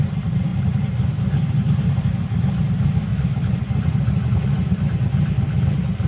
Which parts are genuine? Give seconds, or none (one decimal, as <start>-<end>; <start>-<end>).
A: 0.0-3.1; 4.8-6.1